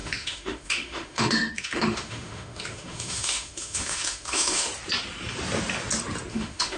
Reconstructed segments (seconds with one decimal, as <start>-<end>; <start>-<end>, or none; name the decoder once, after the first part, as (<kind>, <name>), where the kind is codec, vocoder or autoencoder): 0.0-4.7 (autoencoder, DAC-VAE); 6.3-6.8